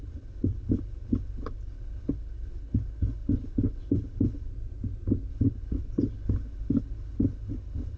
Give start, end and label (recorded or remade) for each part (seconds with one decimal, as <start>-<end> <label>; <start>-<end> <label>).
0.0-4.5 remade; 4.5-5.3 recorded; 5.3-8.0 remade